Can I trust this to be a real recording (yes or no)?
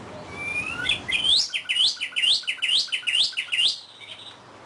yes